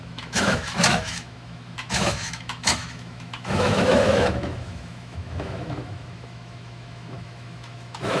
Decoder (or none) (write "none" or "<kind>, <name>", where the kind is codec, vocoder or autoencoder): autoencoder, DAC-VAE